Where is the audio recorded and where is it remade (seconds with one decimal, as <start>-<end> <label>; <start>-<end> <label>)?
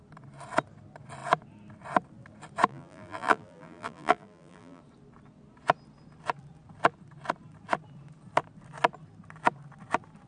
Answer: 0.0-2.7 recorded; 2.7-4.8 remade; 4.8-10.3 recorded